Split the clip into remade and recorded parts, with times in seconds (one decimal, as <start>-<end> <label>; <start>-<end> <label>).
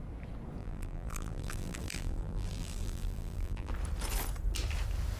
0.0-0.6 recorded; 0.6-3.7 remade; 3.7-5.2 recorded